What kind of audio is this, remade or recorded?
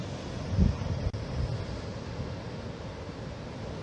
recorded